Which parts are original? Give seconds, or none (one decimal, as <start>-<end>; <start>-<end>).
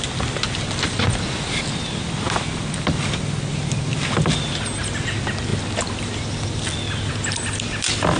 0.0-8.2